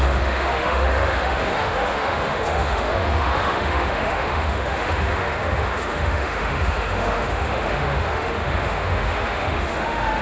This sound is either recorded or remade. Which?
remade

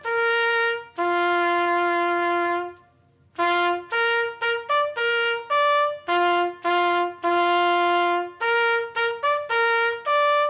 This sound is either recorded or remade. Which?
recorded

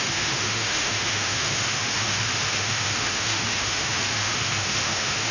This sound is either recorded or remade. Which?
remade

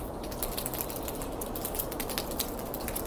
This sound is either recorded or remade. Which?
recorded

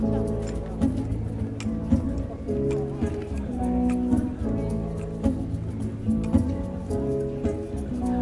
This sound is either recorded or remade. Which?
recorded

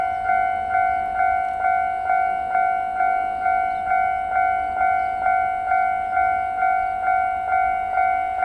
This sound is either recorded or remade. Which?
recorded